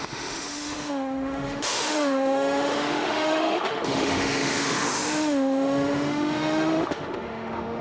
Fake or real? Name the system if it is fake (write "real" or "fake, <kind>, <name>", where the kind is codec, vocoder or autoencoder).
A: fake, autoencoder, DAC-VAE